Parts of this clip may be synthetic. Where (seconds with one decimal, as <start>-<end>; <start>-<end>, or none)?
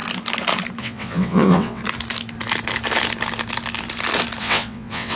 0.8-1.8; 4.4-5.2